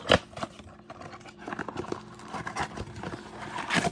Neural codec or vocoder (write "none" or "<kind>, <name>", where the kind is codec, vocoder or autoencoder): none